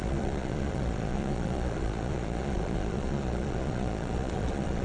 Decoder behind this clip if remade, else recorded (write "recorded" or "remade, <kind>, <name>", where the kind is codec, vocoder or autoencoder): remade, vocoder, Vocos